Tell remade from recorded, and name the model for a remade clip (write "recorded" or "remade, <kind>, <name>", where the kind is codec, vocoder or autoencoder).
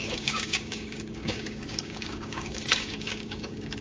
remade, codec, DAC